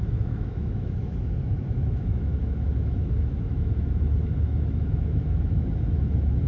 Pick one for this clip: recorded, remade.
remade